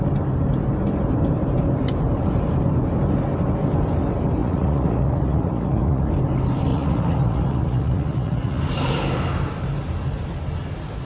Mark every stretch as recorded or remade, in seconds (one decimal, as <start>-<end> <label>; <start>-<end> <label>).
0.0-4.4 recorded; 4.4-6.1 remade; 6.1-6.7 recorded; 6.7-8.6 remade; 8.6-11.1 recorded